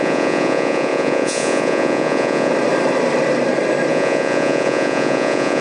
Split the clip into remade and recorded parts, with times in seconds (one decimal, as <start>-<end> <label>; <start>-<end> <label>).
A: 0.0-2.5 remade; 2.5-3.9 recorded; 3.9-5.6 remade